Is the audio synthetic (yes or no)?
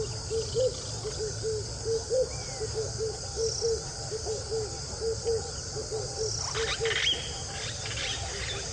no